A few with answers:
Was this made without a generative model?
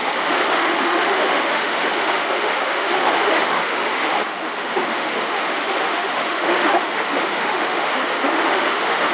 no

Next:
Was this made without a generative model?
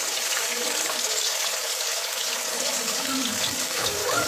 no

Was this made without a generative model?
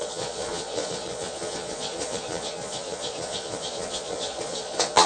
no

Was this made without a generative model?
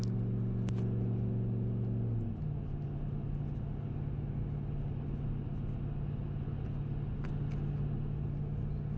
yes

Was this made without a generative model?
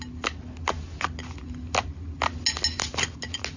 yes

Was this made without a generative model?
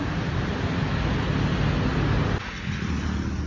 yes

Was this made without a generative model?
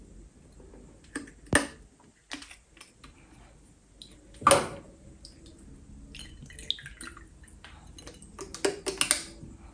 yes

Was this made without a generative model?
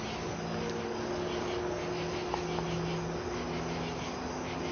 yes